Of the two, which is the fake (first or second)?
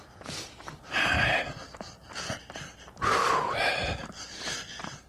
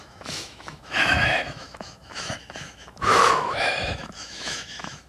second